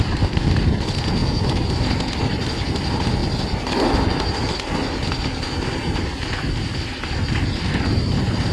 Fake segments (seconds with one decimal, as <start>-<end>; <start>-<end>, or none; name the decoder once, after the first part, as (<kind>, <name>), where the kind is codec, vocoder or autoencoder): none